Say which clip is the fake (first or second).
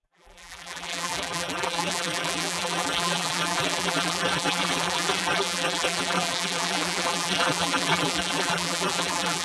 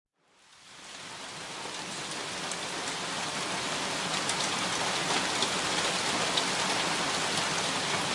first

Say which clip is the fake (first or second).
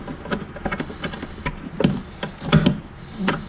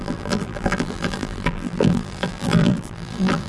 second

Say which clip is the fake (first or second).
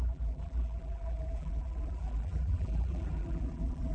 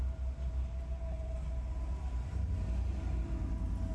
first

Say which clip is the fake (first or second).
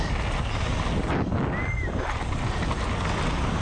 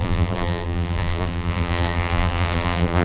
second